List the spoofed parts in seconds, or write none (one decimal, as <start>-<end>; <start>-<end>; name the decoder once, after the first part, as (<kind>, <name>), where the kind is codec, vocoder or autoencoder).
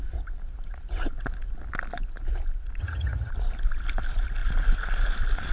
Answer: 2.8-3.3 (vocoder, HiFi-GAN)